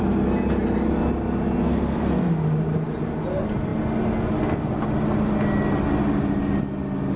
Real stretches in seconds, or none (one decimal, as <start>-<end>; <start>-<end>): 0.0-1.6; 2.4-7.2